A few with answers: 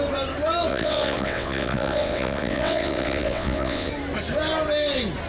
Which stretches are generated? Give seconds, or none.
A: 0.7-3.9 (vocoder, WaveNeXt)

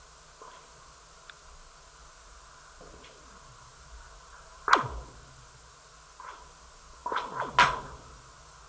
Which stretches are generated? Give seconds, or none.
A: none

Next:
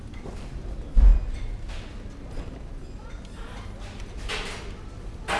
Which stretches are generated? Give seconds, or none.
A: none

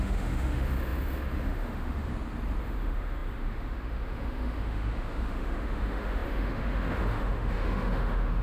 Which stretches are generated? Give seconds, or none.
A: 0.0-2.1 (autoencoder, DAC-VAE); 2.6-8.4